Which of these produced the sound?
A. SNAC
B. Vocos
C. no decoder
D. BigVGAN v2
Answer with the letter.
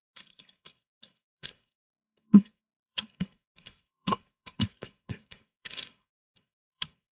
A